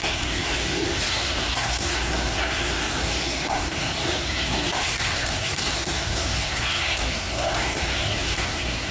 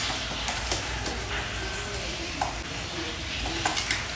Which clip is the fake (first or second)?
first